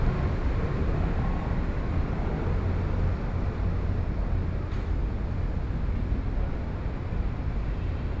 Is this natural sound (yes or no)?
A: yes